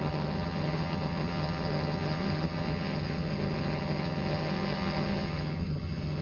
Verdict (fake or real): fake